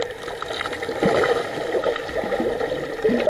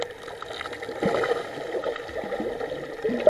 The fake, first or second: first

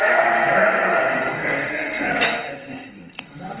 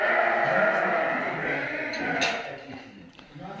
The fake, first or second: first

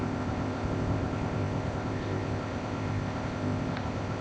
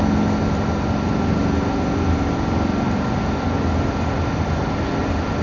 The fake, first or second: first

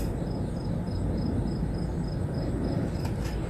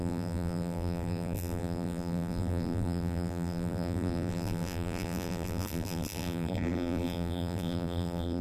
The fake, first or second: second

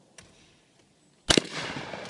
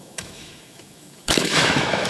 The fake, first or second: second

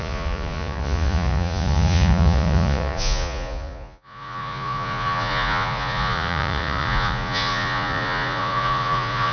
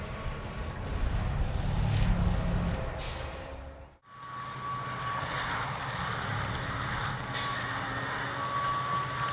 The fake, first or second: first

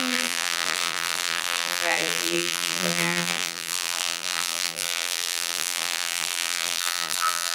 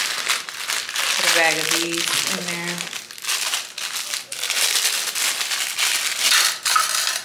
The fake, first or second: first